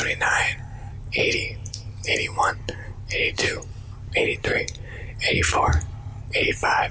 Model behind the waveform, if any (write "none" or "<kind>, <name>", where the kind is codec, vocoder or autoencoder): vocoder, BigVGAN v2